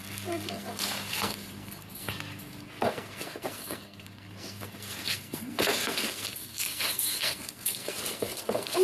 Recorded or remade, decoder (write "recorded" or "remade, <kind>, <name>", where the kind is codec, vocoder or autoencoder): remade, codec, SNAC